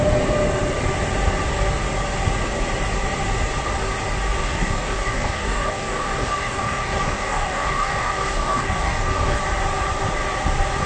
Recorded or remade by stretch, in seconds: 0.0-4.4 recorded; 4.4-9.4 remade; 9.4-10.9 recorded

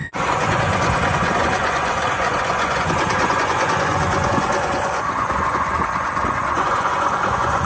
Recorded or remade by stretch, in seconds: 0.0-7.7 remade

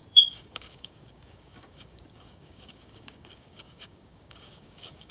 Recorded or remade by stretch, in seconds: 0.0-5.1 remade

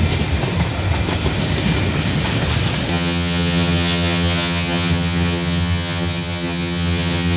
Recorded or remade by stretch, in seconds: 0.0-2.9 recorded; 2.9-7.4 remade

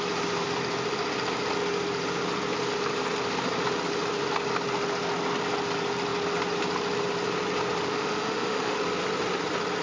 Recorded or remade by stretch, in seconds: 0.0-7.9 recorded; 7.9-8.8 remade; 8.8-9.8 recorded

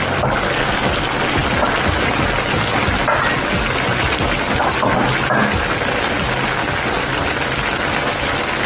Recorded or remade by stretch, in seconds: 0.0-8.7 recorded

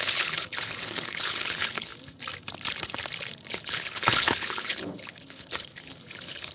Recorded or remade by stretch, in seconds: 0.0-1.9 remade; 1.9-3.5 recorded; 3.5-6.5 remade